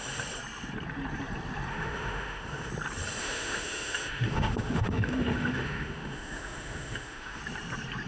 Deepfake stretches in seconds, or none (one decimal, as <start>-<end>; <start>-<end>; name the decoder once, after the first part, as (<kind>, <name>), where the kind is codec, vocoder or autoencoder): 1.7-2.7 (autoencoder, DAC-VAE); 3.2-7.4